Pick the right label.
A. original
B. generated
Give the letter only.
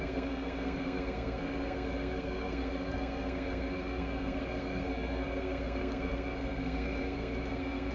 B